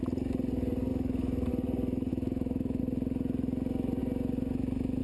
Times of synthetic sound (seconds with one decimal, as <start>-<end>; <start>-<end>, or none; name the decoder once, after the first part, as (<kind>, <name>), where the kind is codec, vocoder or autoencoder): 0.9-1.5 (autoencoder, DAC-VAE); 2.1-2.8